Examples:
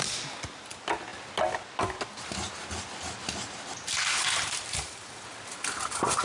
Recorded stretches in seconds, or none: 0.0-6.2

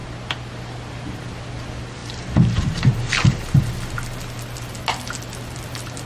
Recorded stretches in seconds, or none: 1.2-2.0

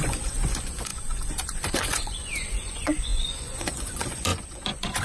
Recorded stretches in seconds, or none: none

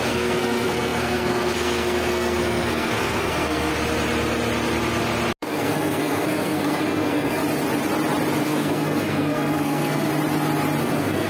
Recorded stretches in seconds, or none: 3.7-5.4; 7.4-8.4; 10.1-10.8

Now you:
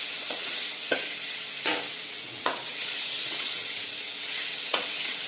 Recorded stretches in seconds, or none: none